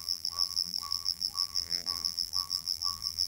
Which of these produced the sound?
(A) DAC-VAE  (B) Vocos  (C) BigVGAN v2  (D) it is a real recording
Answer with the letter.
C